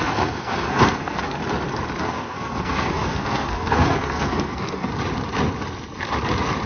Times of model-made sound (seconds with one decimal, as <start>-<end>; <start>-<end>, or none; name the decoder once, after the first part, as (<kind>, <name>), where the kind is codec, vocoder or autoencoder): 0.0-1.4 (codec, SNAC); 2.0-4.9